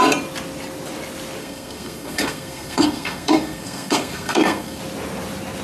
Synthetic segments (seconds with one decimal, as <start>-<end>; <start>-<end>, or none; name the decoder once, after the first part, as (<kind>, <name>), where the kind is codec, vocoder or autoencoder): 1.4-4.8 (codec, SNAC)